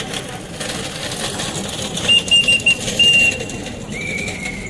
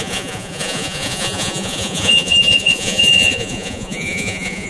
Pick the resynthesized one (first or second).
second